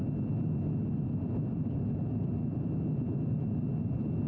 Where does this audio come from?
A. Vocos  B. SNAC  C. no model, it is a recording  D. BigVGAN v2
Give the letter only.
C